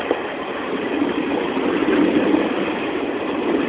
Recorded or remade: recorded